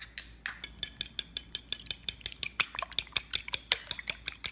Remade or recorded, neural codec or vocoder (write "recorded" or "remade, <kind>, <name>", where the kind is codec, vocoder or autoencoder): recorded